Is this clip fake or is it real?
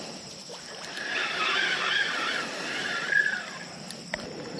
fake